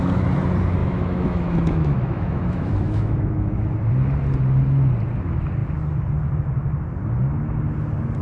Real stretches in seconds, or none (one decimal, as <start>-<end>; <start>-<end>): 0.0-0.8; 3.9-8.2